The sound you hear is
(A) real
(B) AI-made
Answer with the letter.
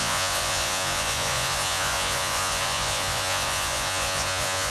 B